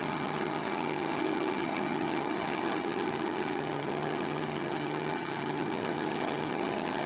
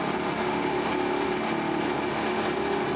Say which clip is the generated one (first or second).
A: first